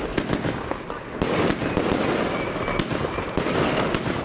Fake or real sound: real